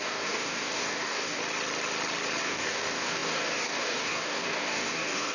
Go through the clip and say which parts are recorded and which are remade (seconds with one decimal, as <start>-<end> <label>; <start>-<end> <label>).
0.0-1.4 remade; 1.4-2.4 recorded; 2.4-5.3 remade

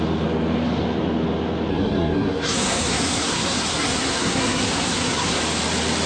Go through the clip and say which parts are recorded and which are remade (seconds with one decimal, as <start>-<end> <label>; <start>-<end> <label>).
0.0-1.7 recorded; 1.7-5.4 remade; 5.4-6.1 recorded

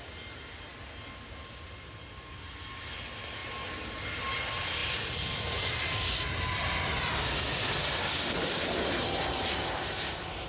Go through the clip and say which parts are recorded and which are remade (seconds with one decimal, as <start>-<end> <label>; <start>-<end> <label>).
0.0-10.5 recorded

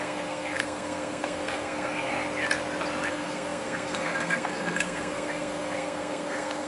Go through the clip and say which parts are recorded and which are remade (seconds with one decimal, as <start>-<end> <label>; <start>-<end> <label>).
0.0-2.1 remade; 2.1-3.1 recorded; 3.1-6.7 remade

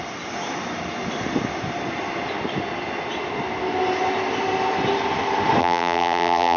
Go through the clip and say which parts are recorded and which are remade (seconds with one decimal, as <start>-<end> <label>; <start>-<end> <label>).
0.0-5.6 recorded; 5.6-6.6 remade

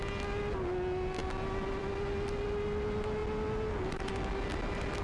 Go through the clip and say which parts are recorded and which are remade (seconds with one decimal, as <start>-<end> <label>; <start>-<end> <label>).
0.0-5.0 recorded

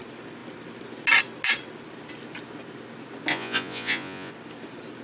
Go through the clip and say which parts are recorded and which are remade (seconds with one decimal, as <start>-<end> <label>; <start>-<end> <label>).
0.0-3.3 recorded; 3.3-4.3 remade; 4.3-5.0 recorded